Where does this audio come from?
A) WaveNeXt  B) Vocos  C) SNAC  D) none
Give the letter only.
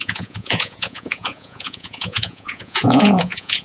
B